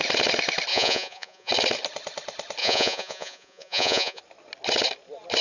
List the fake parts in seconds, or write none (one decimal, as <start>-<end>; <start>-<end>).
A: 0.7-1.5; 2.6-4.2